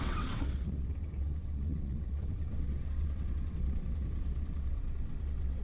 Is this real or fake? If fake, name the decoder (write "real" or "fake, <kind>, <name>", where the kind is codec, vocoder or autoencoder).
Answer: fake, vocoder, WaveNeXt